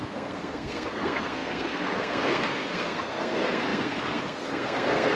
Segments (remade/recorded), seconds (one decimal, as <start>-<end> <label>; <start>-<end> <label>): 0.0-5.2 remade

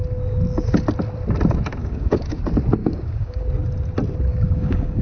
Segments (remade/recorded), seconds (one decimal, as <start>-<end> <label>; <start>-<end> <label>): 0.0-1.8 recorded; 1.8-2.4 remade; 2.4-2.8 recorded; 2.8-3.4 remade; 3.4-4.3 recorded; 4.3-5.0 remade

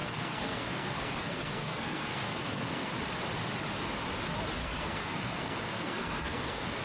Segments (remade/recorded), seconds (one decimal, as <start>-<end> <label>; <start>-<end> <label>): 0.0-2.9 remade; 2.9-4.6 recorded; 4.6-6.8 remade

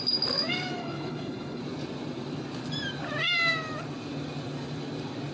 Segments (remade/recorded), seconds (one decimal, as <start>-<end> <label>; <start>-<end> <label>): 0.0-0.8 recorded; 0.8-1.6 remade; 1.6-5.3 recorded

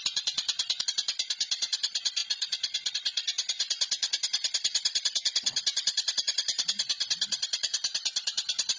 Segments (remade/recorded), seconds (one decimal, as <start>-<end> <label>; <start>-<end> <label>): 0.0-8.8 recorded

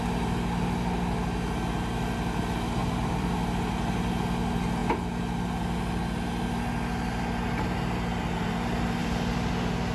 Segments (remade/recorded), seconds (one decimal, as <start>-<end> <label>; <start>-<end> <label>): 0.0-2.8 recorded; 2.8-3.3 remade; 3.3-9.0 recorded; 9.0-9.5 remade; 9.5-9.9 recorded